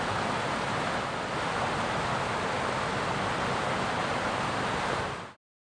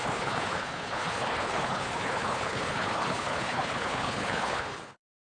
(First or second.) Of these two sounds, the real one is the first